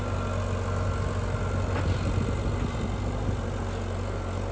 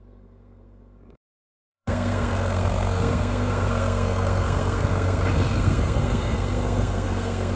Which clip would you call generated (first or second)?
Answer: second